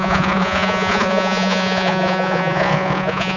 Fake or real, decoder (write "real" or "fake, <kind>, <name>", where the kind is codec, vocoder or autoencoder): fake, vocoder, Vocos